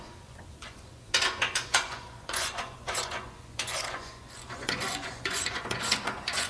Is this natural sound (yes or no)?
no